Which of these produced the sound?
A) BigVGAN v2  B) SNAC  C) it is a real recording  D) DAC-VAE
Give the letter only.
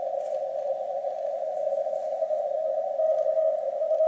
C